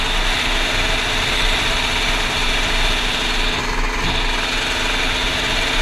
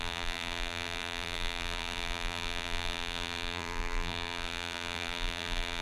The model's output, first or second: second